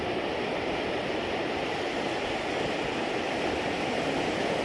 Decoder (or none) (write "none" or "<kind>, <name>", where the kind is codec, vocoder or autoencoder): none